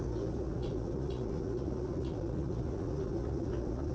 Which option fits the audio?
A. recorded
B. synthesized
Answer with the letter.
B